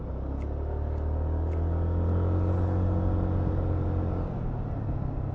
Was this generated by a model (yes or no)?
no